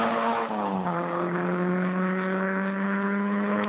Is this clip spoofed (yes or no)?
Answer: yes